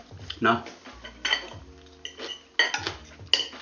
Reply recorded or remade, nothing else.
recorded